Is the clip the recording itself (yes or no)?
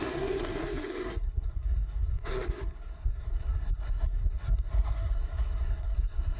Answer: no